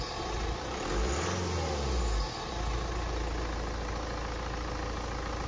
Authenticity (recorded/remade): recorded